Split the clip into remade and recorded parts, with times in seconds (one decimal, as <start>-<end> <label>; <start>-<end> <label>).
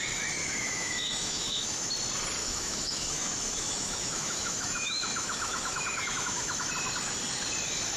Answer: 0.0-0.4 recorded; 0.4-1.9 remade; 1.9-2.4 recorded; 2.4-6.7 remade; 6.7-8.0 recorded